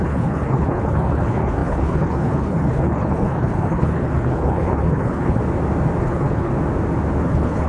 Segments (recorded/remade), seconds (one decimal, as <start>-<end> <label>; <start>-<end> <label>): 0.0-5.4 remade; 5.4-6.0 recorded; 6.0-6.5 remade; 6.5-7.2 recorded; 7.2-7.7 remade